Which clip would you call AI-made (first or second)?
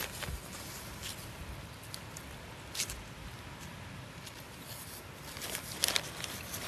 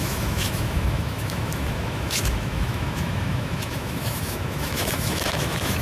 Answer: second